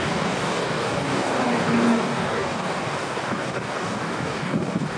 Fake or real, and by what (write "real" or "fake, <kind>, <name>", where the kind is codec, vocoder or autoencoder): fake, codec, DAC